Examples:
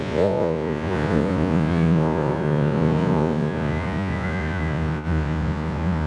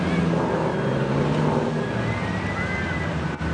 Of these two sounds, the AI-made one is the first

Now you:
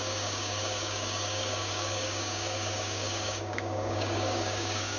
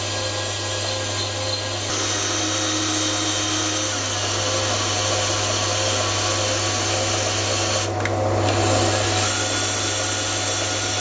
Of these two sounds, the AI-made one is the first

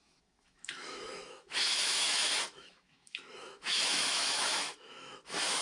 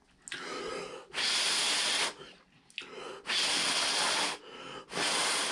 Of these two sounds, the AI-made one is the first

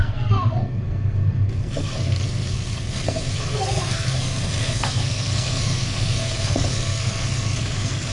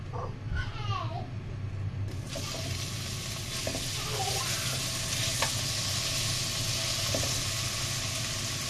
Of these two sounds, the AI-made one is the first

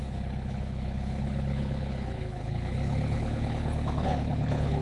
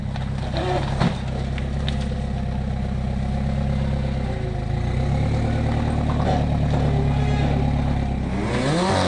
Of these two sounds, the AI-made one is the first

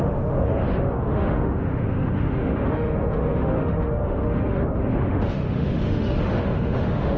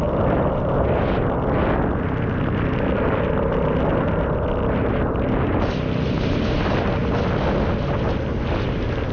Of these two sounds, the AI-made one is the first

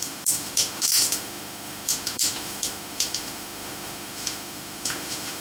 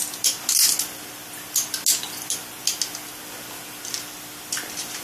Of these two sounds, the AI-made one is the first